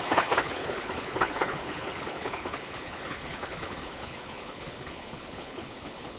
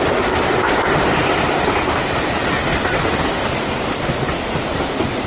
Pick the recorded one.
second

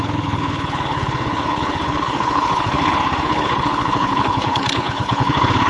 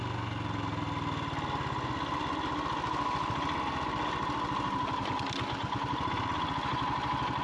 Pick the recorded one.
second